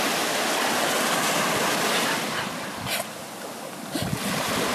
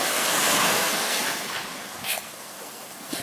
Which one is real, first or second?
first